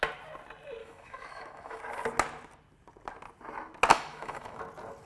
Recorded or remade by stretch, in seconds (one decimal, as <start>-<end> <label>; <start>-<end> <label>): 0.0-0.8 recorded; 0.8-1.8 remade; 1.8-3.9 recorded; 3.9-4.6 remade; 4.6-5.1 recorded